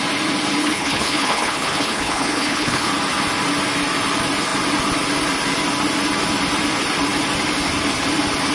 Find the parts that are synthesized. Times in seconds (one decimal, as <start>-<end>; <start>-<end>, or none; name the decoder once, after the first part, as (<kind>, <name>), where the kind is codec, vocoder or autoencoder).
0.6-2.9 (codec, HILCodec)